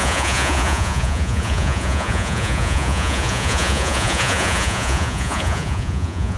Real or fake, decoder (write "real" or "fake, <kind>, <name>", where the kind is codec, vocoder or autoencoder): fake, vocoder, Vocos